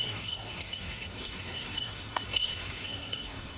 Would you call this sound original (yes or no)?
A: no